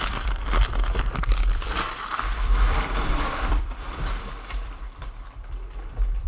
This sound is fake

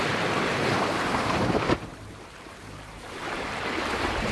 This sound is fake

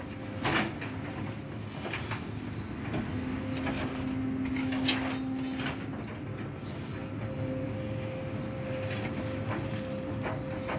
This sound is real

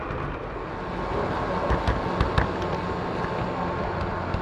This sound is real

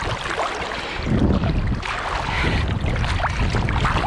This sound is real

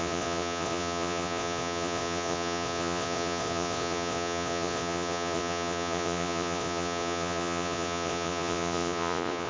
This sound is fake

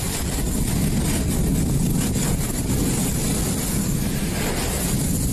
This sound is real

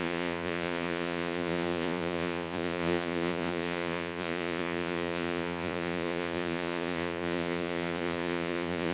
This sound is fake